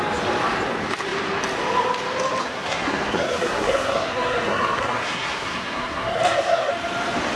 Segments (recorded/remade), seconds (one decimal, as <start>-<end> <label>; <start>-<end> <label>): 0.0-2.4 recorded; 2.4-6.7 remade; 6.7-7.4 recorded